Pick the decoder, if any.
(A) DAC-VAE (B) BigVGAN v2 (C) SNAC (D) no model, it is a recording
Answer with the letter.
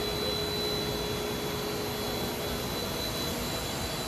D